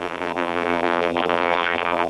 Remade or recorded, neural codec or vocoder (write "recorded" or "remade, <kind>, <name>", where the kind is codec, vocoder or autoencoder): remade, vocoder, BigVGAN v2